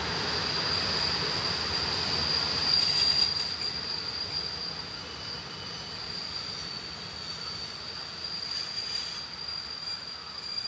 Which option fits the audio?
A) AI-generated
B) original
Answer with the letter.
B